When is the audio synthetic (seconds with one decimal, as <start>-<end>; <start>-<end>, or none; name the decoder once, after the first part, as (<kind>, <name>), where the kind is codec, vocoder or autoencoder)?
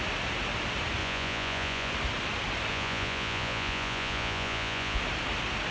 1.0-1.9 (vocoder, Vocos); 2.7-5.0